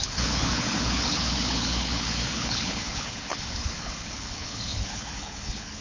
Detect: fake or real fake